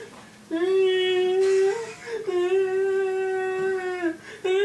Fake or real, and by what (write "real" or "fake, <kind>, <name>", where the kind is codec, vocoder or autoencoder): real